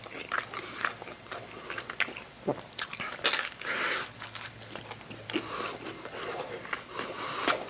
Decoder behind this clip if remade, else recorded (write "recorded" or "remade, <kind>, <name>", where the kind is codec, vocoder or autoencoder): recorded